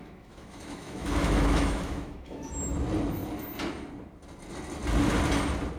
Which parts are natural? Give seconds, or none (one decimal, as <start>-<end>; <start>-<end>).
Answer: 2.5-5.8